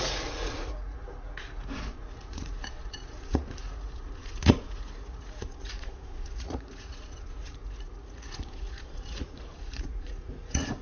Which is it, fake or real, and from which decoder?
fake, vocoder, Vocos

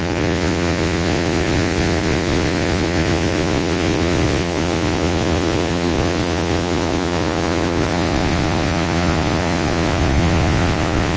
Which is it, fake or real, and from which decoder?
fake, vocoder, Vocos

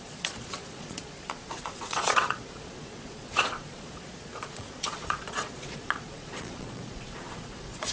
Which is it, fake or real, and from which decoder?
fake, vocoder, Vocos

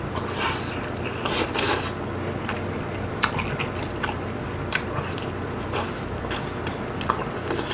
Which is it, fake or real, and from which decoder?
real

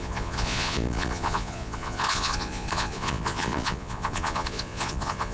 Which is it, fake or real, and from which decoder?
fake, vocoder, Vocos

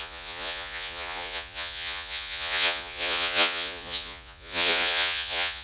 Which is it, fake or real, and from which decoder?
fake, vocoder, Vocos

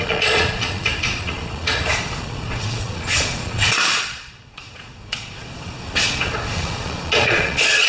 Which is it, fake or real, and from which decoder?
fake, vocoder, Vocos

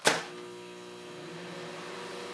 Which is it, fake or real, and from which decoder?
real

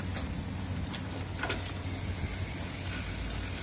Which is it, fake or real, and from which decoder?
real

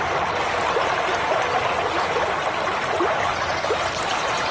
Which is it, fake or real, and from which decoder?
real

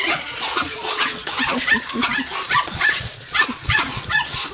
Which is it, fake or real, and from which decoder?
fake, vocoder, Vocos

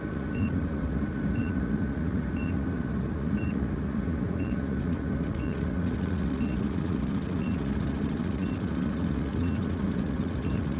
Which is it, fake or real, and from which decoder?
fake, vocoder, Vocos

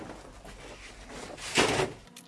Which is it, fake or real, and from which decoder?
real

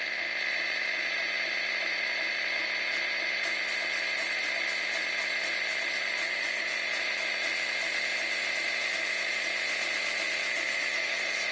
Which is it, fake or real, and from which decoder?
fake, vocoder, Vocos